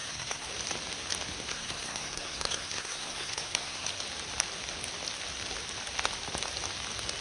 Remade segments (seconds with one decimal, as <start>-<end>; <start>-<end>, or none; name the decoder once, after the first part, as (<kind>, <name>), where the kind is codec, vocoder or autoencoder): 0.0-0.5 (codec, SNAC); 1.5-3.9